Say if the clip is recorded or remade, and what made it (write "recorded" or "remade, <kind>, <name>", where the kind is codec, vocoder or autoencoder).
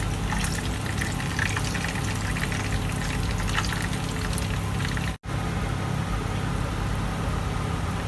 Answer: recorded